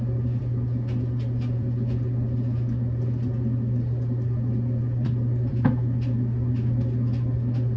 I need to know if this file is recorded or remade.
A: recorded